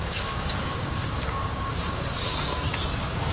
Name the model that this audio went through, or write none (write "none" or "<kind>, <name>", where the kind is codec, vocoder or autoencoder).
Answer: codec, DAC